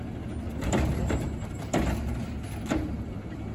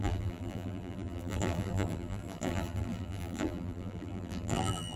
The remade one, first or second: second